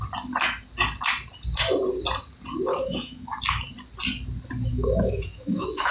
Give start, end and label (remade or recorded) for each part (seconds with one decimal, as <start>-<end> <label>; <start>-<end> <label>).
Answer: 0.0-2.7 recorded; 2.7-3.4 remade; 3.4-4.7 recorded; 4.7-5.9 remade